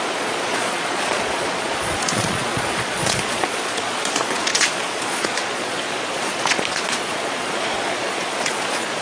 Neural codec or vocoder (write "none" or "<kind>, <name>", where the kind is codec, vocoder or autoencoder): vocoder, Vocos